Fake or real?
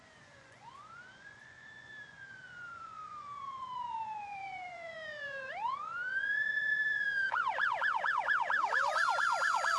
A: fake